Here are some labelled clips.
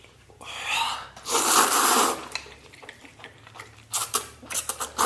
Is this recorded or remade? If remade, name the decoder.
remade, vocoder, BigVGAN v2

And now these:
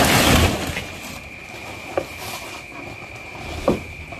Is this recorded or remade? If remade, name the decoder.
recorded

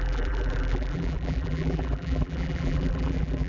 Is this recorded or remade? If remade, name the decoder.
remade, vocoder, BigVGAN v2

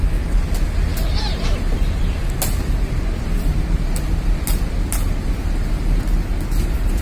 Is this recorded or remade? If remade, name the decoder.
recorded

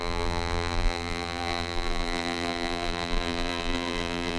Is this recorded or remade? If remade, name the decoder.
remade, vocoder, BigVGAN v2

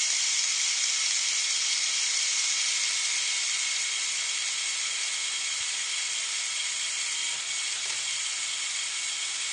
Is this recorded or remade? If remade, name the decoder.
recorded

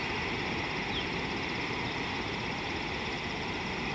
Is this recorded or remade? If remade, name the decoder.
remade, vocoder, BigVGAN v2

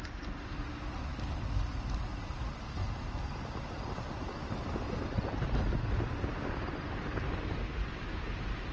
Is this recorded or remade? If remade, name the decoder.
recorded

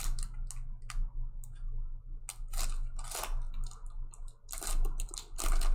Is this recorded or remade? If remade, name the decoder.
recorded